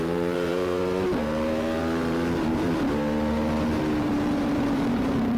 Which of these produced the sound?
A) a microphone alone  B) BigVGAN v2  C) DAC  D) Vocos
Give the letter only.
B